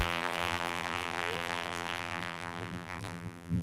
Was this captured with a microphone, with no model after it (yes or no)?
no